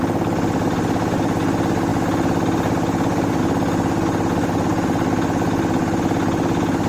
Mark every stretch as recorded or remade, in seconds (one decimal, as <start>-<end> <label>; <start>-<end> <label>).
0.0-6.9 recorded